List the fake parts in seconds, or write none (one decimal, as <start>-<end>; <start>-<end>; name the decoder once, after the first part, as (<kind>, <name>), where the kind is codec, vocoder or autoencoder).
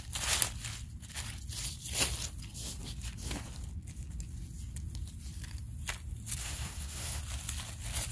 6.4-7.2 (codec, SNAC)